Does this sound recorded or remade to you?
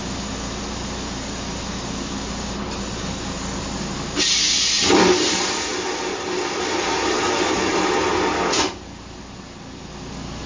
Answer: recorded